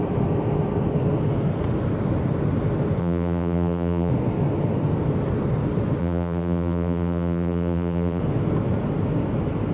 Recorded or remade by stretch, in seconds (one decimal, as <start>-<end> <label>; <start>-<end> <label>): 0.0-3.0 recorded; 3.0-4.1 remade; 4.1-6.0 recorded; 6.0-8.2 remade; 8.2-9.7 recorded